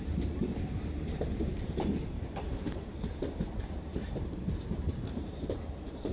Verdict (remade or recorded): remade